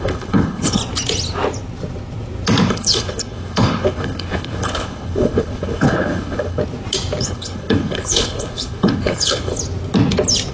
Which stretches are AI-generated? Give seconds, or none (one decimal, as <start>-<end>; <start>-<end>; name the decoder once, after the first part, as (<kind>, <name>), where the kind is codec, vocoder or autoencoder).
0.0-0.8 (codec, HILCodec); 2.7-6.6; 7.2-9.5